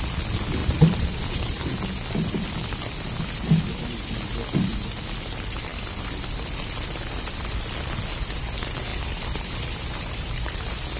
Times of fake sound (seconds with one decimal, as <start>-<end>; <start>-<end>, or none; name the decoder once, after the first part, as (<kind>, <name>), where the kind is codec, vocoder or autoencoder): 0.6-1.8 (vocoder, BigVGAN v2); 8.9-10.6